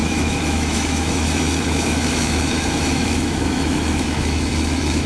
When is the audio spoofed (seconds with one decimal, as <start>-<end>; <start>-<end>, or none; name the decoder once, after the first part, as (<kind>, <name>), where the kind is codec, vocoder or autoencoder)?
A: 0.0-5.1 (autoencoder, DAC-VAE)